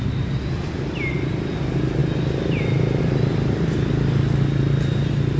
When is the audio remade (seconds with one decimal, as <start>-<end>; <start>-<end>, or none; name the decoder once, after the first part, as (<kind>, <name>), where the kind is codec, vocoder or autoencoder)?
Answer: none